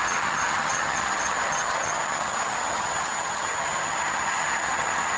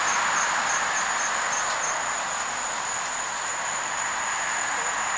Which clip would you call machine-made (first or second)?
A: first